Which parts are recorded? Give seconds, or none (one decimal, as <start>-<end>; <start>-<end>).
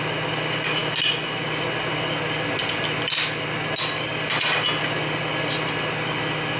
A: 0.0-6.6